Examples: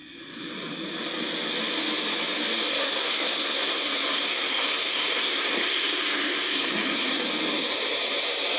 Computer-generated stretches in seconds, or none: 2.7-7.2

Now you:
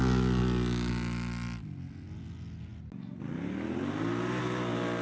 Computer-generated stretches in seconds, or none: none